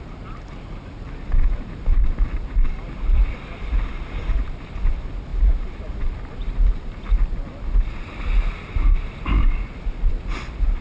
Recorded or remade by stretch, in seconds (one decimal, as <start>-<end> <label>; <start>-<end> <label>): 0.0-10.8 recorded